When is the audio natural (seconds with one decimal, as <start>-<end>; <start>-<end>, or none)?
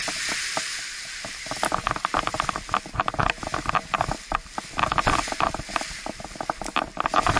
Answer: 0.0-7.4